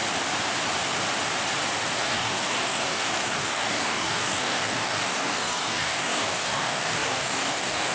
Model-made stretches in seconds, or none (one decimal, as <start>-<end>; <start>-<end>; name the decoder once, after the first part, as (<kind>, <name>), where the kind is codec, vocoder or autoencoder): 2.0-7.9 (codec, DAC)